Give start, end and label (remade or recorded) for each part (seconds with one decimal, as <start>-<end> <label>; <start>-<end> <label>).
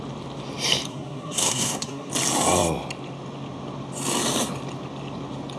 0.0-0.9 recorded; 0.9-2.1 remade; 2.1-5.6 recorded